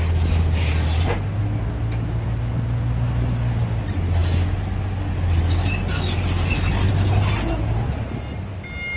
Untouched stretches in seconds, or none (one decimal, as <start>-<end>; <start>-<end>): 0.0-9.0